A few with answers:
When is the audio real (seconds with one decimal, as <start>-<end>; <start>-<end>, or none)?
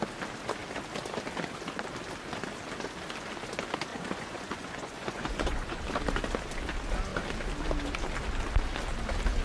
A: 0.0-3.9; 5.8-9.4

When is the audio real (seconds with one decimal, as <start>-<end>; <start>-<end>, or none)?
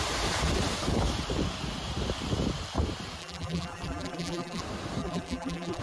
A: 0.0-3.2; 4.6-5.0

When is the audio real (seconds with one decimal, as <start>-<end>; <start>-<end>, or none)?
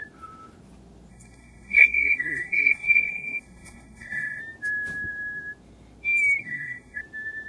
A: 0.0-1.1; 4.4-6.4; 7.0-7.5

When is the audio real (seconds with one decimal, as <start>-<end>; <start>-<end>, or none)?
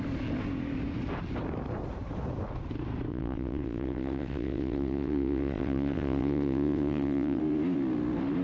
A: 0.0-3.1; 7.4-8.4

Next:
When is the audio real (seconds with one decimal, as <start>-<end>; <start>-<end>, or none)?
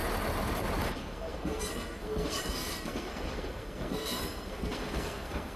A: 0.0-0.8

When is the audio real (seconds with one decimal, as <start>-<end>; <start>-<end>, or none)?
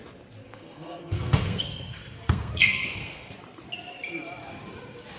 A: 0.0-0.4; 3.3-5.2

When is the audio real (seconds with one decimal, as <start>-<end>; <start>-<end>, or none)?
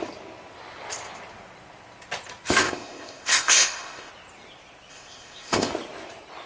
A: 0.0-2.6; 4.1-4.9; 5.7-6.5